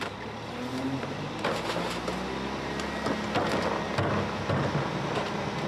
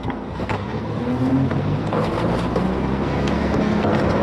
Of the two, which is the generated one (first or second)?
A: second